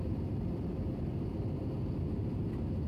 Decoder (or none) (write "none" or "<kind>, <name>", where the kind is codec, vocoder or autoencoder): none